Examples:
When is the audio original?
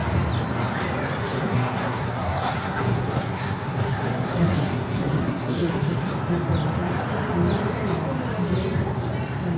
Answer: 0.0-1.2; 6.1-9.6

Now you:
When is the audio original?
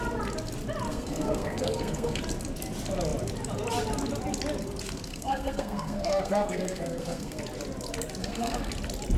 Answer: 0.0-0.9; 2.2-5.1; 7.4-8.2; 8.7-9.2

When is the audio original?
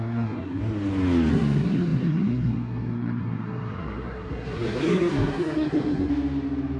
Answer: 0.6-1.3; 6.1-6.8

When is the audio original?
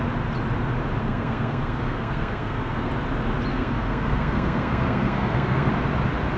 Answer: 0.0-1.0; 2.9-3.5; 5.7-6.4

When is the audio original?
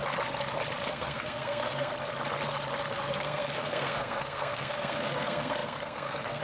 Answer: 0.0-0.9; 1.9-2.9